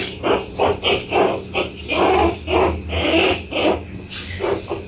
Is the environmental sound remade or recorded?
recorded